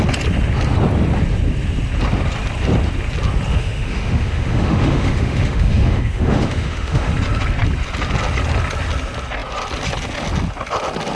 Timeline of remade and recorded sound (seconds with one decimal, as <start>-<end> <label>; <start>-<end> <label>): 0.0-3.5 recorded; 3.5-7.1 remade; 7.1-11.2 recorded